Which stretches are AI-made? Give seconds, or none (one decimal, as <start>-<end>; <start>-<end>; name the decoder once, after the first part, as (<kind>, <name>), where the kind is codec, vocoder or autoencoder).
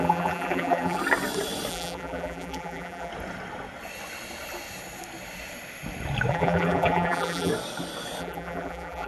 0.0-1.0 (vocoder, BigVGAN v2); 1.7-3.1; 6.3-7.5; 8.2-9.1